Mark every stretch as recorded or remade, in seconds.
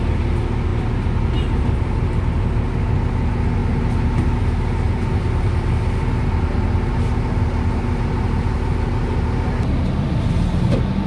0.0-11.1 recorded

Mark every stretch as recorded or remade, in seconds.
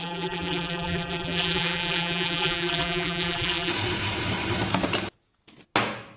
0.0-3.7 remade; 3.7-6.2 recorded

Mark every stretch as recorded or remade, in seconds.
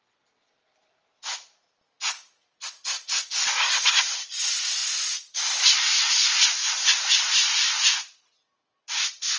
0.0-9.4 recorded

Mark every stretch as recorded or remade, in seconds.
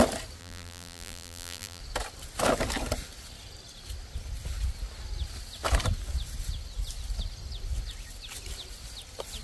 0.0-0.4 recorded; 0.4-1.8 remade; 1.8-9.4 recorded